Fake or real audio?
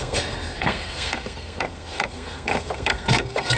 fake